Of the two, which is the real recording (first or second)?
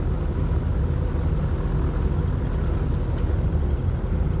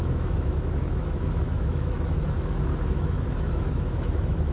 first